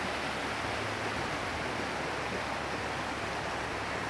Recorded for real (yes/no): yes